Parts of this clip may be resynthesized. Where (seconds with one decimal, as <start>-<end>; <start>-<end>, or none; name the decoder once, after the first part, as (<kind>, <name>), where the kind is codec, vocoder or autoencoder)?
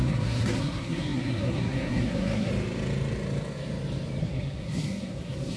0.0-2.5 (codec, SNAC); 4.2-5.6